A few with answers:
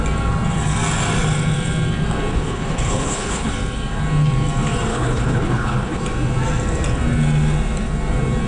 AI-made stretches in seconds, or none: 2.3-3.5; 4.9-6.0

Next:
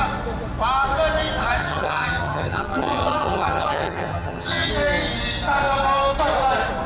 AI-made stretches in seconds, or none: 1.6-4.7

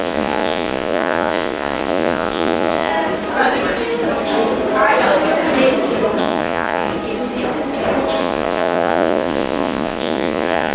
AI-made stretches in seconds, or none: 0.0-2.9; 6.2-6.9; 8.2-10.7